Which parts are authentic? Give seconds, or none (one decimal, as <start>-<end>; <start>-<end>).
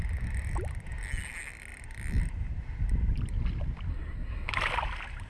0.0-3.9; 4.5-5.3